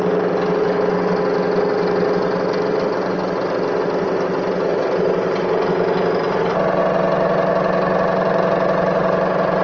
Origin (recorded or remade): recorded